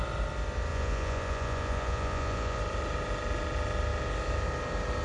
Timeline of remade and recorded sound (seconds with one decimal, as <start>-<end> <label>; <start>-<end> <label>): 0.0-0.7 recorded; 0.7-2.6 remade; 2.6-5.0 recorded